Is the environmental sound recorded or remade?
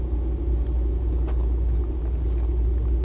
recorded